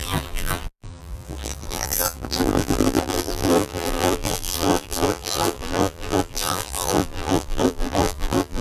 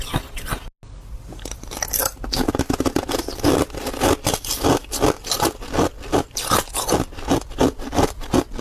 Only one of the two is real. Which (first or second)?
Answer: second